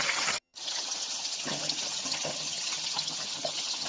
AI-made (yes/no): yes